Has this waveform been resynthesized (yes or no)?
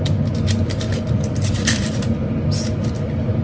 no